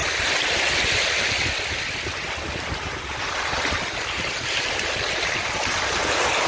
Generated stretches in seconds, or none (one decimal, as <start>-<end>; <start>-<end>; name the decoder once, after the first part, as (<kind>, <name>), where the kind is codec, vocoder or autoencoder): 3.9-6.5 (vocoder, BigVGAN v2)